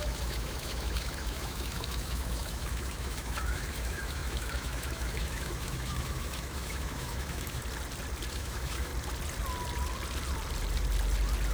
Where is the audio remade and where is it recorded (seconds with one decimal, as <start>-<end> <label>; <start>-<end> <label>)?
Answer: 0.0-7.6 remade; 7.6-8.3 recorded; 8.3-8.9 remade; 8.9-11.5 recorded